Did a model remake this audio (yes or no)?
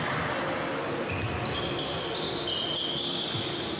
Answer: no